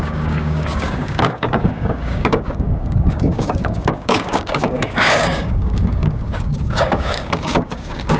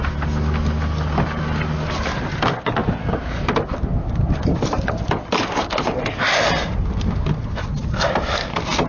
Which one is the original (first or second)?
second